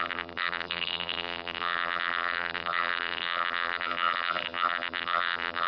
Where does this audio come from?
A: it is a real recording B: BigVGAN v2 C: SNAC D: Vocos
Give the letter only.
B